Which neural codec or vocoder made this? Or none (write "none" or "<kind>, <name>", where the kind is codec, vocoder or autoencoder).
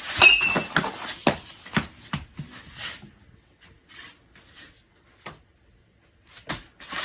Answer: none